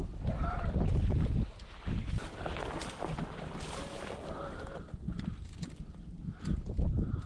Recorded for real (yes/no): yes